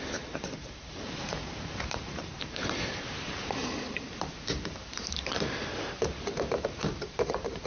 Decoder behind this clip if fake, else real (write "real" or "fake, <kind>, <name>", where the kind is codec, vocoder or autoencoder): fake, vocoder, BigVGAN v2